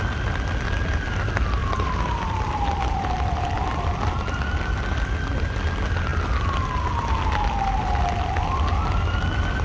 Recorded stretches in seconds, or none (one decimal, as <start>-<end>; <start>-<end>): 0.0-1.6; 5.1-9.6